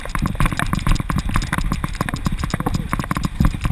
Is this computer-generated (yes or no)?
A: no